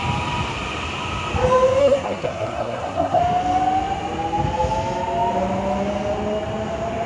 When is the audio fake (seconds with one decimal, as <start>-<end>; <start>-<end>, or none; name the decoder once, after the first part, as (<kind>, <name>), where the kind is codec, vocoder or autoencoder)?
1.8-3.2 (codec, SNAC)